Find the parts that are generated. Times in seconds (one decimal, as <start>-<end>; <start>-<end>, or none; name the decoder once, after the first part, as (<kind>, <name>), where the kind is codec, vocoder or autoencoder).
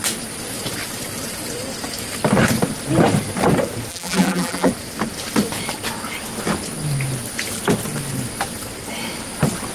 3.9-4.7 (vocoder, BigVGAN v2)